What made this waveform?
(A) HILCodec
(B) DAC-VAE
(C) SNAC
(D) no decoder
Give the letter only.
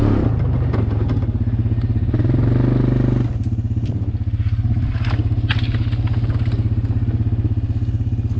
D